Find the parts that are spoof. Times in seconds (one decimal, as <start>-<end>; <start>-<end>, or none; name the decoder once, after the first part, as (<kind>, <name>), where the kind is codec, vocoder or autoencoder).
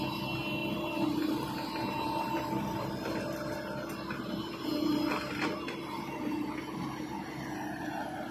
0.6-2.9 (vocoder, BigVGAN v2)